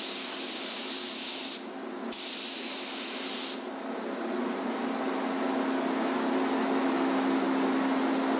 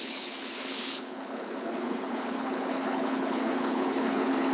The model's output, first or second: second